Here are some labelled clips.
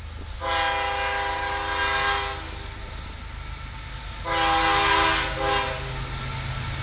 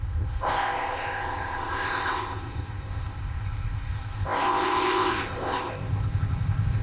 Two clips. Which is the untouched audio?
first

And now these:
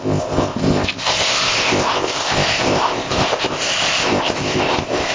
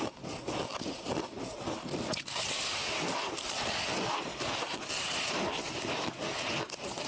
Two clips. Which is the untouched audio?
second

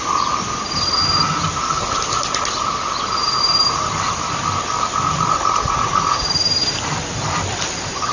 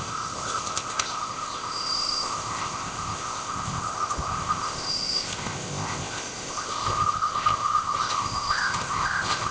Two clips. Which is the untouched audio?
first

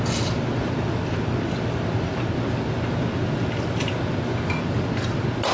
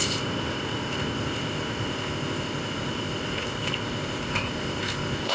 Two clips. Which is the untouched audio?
first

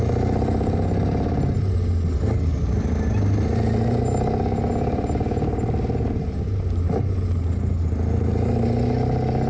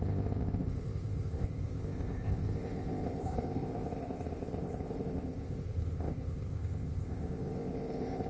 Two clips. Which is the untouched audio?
first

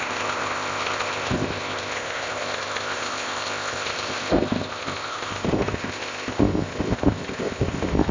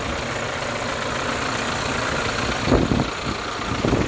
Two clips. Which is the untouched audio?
second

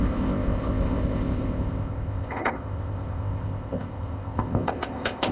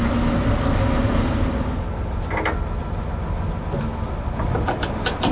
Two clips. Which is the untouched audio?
second